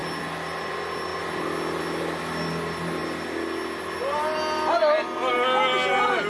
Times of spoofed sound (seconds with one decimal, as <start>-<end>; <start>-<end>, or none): none